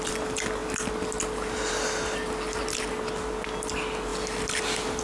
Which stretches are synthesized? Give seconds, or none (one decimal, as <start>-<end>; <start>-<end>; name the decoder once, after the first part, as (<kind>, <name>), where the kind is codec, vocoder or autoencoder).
none